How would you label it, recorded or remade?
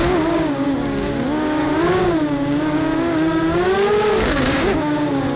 remade